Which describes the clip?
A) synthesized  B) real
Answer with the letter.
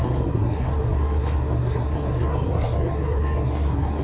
A